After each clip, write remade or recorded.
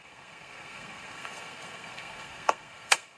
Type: remade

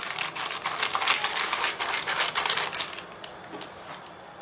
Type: recorded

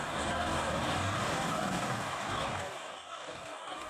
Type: remade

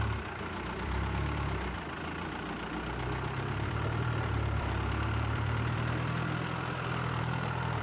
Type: remade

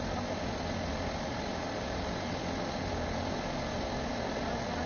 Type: recorded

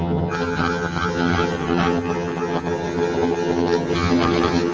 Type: remade